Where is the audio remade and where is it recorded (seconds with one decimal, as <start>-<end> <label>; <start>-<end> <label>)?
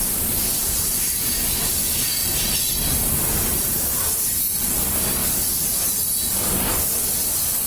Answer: 0.0-0.6 recorded; 0.6-2.1 remade; 2.1-7.7 recorded